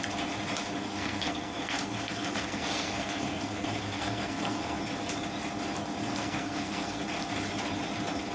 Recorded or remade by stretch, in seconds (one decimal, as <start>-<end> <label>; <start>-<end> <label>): 0.0-0.8 recorded; 0.8-4.8 remade; 4.8-6.0 recorded; 6.0-7.0 remade; 7.0-8.3 recorded